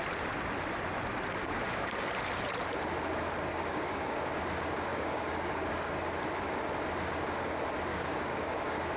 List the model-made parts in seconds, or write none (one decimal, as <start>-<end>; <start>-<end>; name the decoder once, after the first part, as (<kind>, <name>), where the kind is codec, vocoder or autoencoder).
1.4-2.1 (codec, DAC); 3.5-4.4; 4.9-5.9; 7.9-9.0